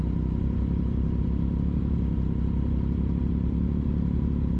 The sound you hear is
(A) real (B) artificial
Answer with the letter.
A